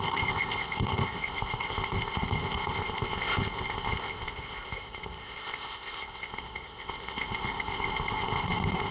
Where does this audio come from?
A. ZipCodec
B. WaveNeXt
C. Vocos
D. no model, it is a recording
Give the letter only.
A